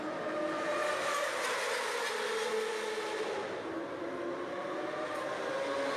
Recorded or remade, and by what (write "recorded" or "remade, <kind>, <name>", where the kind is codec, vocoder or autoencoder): recorded